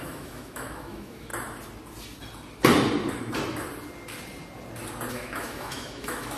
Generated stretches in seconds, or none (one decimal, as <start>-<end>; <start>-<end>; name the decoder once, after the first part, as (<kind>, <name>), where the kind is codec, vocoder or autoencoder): 0.0-1.3 (autoencoder, DAC-VAE); 5.1-6.4